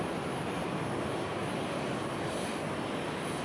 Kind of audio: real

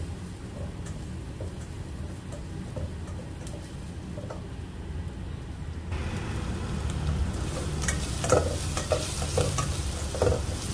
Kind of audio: real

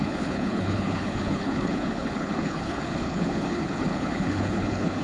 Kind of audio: fake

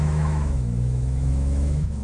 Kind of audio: fake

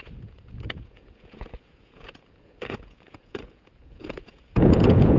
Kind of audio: fake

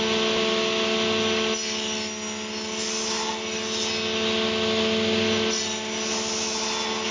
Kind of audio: real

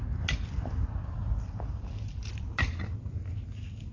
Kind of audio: real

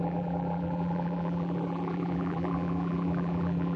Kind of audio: fake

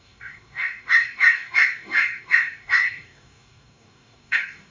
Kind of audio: fake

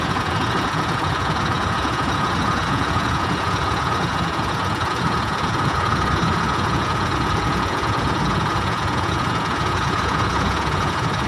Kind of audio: fake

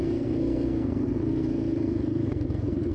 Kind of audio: fake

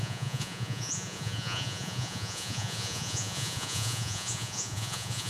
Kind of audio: fake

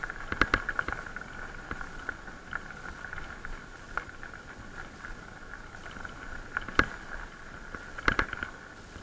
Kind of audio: real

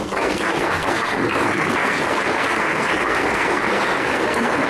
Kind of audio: fake